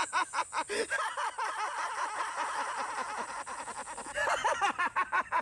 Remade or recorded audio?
recorded